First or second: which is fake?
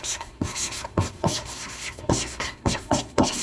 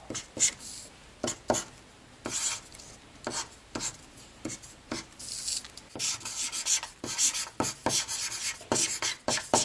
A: first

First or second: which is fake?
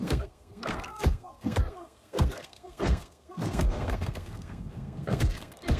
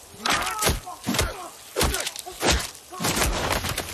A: first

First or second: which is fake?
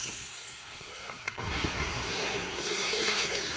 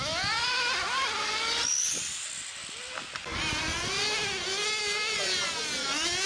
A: first